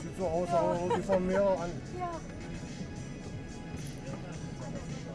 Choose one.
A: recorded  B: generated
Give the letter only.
A